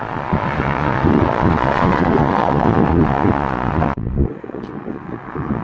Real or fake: fake